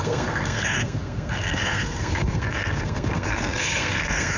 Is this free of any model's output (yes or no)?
no